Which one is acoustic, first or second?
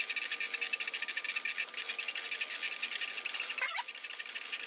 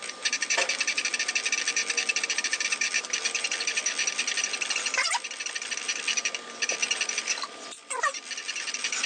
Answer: first